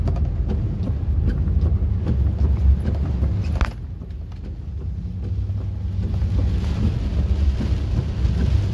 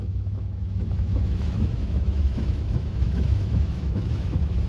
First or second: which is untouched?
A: first